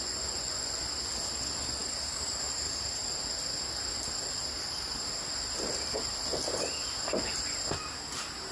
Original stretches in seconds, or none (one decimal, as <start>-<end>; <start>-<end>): 0.8-8.5